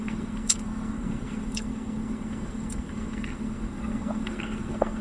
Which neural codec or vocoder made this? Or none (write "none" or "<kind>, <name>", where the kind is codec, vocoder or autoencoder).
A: codec, SNAC